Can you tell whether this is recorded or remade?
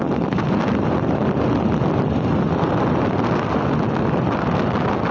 recorded